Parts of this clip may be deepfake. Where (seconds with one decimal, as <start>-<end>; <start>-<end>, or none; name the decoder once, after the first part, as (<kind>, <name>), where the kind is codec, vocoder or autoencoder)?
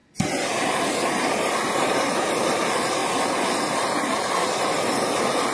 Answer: none